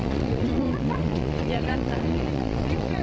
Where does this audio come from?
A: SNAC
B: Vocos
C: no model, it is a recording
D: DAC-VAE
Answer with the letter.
B